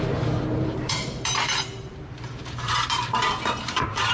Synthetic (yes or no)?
yes